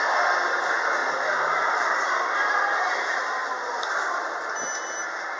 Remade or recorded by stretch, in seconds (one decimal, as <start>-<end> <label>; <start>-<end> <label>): 0.0-1.0 recorded; 1.0-2.9 remade; 2.9-3.4 recorded; 3.4-4.5 remade; 4.5-5.4 recorded